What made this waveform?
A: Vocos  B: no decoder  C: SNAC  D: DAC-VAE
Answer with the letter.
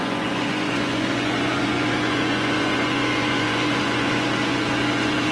A